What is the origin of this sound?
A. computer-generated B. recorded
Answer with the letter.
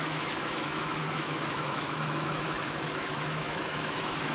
A